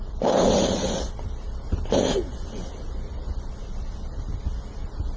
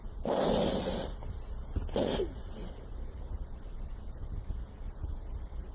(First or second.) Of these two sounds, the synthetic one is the second